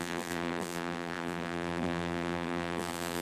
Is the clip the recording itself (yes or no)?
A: no